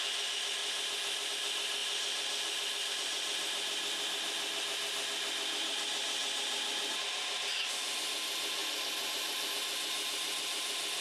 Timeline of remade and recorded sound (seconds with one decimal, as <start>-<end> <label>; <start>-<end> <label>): 0.0-0.6 recorded; 0.6-1.3 remade; 1.3-8.6 recorded; 8.6-9.5 remade; 9.5-11.0 recorded